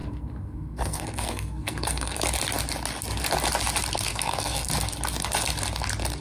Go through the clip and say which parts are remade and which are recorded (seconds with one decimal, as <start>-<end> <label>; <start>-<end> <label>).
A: 0.0-2.2 remade; 2.2-4.1 recorded; 4.1-4.7 remade; 4.7-6.2 recorded

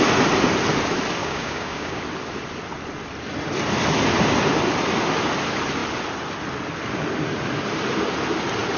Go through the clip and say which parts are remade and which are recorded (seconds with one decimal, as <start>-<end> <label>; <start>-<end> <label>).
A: 0.0-1.2 recorded; 1.2-2.0 remade; 2.0-8.8 recorded

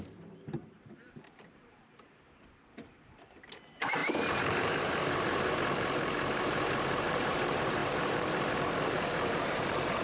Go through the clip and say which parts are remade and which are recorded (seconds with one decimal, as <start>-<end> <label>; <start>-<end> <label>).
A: 0.0-10.0 remade

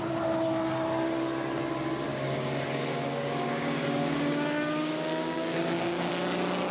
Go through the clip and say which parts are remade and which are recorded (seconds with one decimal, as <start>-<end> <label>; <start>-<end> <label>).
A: 0.0-2.1 recorded; 2.1-6.1 remade; 6.1-6.7 recorded

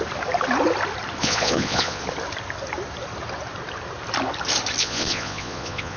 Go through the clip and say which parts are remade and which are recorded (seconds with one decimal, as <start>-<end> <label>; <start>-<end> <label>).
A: 0.0-1.2 recorded; 1.2-2.0 remade; 2.0-4.8 recorded; 4.8-6.0 remade

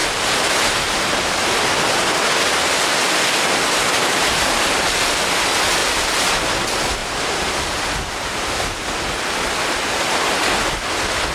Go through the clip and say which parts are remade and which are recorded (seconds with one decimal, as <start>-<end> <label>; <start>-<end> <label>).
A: 0.0-1.3 remade; 1.3-4.0 recorded; 4.0-4.8 remade; 4.8-5.8 recorded; 5.8-6.4 remade; 6.4-7.0 recorded; 7.0-7.5 remade; 7.5-11.3 recorded